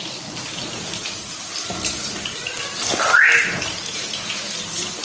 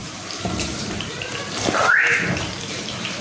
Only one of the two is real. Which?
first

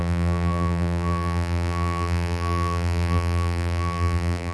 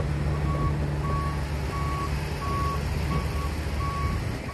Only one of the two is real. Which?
second